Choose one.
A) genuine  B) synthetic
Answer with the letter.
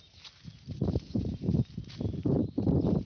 B